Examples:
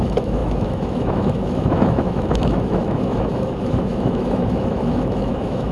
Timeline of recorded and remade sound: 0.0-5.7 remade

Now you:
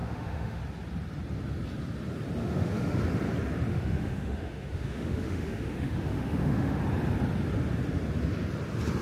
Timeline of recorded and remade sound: 0.0-0.6 remade; 0.6-2.4 recorded; 2.4-3.0 remade; 3.0-3.7 recorded; 3.7-6.8 remade; 6.8-9.0 recorded

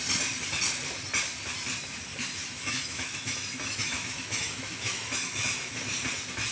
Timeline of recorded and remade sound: 0.0-2.4 recorded; 2.4-5.8 remade; 5.8-6.5 recorded

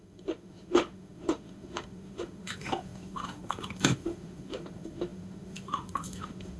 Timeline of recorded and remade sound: 0.0-6.6 remade